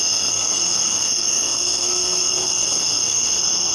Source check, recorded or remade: remade